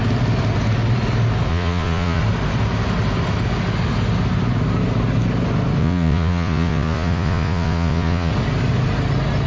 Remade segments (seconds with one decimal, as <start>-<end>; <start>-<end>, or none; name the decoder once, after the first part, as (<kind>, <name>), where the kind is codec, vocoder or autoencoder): 1.5-2.2 (vocoder, Vocos); 5.8-8.3